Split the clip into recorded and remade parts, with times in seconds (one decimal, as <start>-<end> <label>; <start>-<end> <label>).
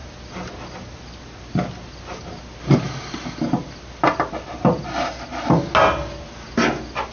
0.0-7.1 recorded